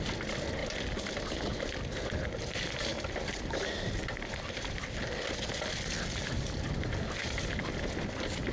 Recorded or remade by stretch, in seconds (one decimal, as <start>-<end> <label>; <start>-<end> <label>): 0.0-8.5 recorded